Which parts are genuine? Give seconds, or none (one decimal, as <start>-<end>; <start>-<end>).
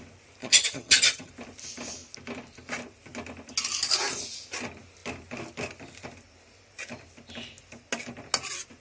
0.0-0.4; 1.3-8.8